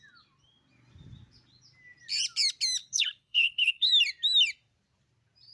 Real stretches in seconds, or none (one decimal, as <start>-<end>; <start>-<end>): 0.0-2.8; 3.9-5.5